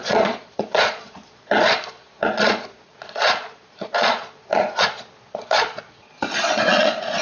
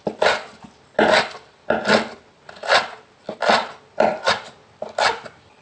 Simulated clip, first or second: first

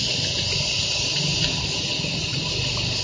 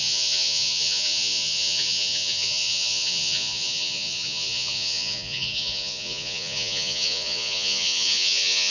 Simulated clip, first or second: second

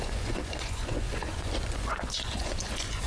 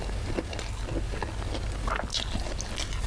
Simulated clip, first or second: first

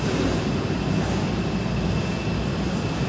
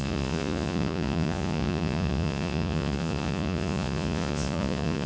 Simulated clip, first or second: second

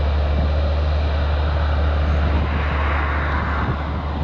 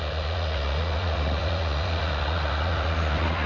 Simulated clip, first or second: second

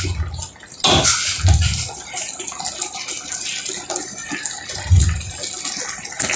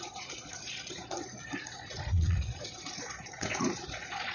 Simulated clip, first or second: second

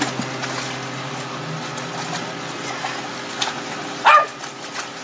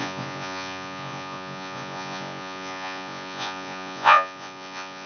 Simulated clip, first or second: second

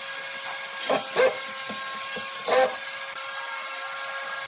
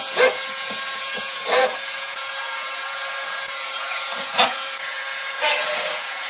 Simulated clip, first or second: second